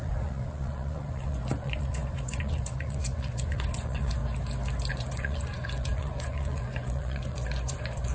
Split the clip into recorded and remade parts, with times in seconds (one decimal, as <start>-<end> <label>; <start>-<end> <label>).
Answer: 0.0-4.2 remade; 4.2-4.9 recorded; 4.9-8.1 remade